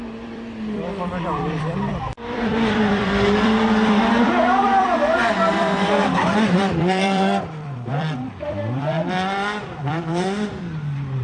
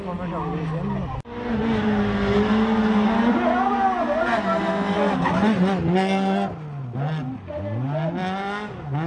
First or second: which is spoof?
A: first